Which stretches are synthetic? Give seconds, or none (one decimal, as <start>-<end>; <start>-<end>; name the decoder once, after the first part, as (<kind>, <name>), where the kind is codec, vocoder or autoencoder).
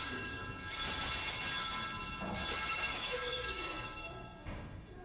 0.0-0.4 (codec, DAC); 2.7-5.0